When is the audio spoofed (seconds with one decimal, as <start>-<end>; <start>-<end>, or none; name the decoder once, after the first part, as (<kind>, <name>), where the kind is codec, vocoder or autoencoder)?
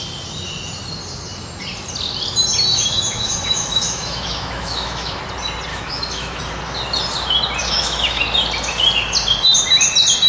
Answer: 2.7-5.2 (autoencoder, DAC-VAE); 5.7-6.4; 7.6-8.2